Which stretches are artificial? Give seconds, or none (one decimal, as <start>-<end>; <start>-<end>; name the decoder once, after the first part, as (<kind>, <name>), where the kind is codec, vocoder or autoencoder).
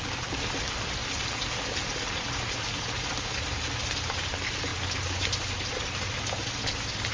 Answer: none